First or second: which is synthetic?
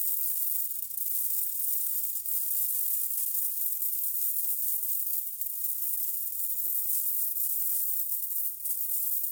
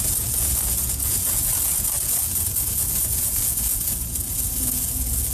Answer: second